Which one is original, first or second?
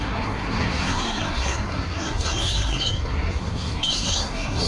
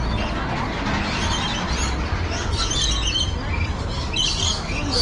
second